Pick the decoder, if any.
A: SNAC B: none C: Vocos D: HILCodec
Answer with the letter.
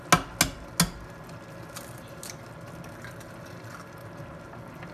B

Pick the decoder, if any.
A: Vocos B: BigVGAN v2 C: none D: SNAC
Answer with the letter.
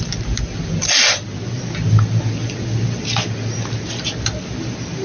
C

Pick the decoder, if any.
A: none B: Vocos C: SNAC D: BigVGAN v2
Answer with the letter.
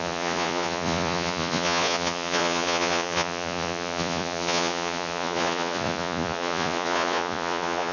B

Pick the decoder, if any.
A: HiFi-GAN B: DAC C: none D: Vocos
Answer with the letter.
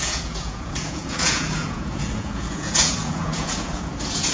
D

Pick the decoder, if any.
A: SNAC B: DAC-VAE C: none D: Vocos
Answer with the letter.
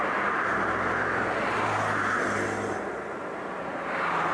C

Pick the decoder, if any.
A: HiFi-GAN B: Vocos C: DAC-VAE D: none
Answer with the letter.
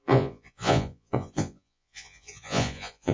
B